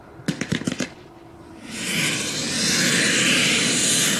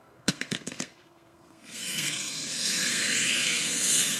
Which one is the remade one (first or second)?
second